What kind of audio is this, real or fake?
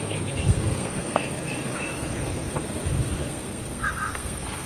fake